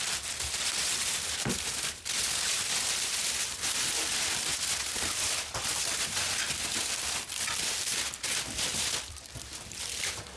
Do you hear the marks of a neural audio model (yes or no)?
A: no